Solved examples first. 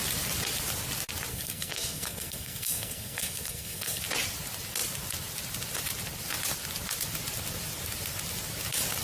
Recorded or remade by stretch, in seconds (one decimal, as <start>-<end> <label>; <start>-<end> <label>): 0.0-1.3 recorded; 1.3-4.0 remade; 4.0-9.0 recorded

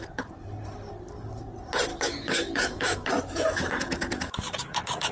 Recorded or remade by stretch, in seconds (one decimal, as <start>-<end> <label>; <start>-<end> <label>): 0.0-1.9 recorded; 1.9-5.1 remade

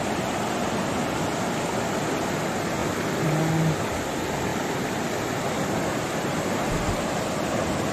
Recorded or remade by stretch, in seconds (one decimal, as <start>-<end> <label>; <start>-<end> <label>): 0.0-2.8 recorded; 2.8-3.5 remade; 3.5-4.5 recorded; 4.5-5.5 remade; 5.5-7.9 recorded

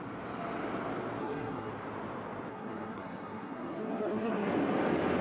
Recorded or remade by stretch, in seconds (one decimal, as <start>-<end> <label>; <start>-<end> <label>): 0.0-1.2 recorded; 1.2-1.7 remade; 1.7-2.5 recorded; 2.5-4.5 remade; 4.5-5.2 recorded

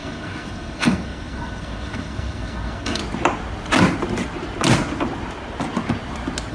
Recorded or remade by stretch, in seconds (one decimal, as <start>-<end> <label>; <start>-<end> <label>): 0.0-3.0 remade; 3.0-6.5 recorded

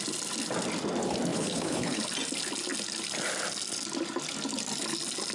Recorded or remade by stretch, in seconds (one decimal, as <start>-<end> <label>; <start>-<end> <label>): 0.0-1.3 recorded; 1.3-2.0 remade; 2.0-5.3 recorded

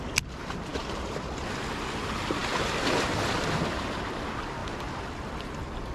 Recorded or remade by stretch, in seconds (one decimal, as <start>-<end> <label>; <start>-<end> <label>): 0.0-0.7 recorded; 0.7-1.2 remade; 1.2-2.4 recorded; 2.4-3.3 remade; 3.3-5.9 recorded